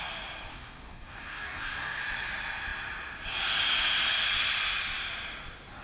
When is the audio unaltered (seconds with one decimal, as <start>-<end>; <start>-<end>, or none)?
0.0-0.5; 2.0-5.8